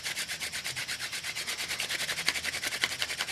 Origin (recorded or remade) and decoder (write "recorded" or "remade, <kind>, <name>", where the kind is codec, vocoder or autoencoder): recorded